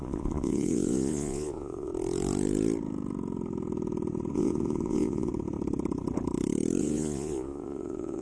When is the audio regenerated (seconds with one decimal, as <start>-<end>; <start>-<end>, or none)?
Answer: 0.0-1.9; 4.3-5.3; 6.8-8.2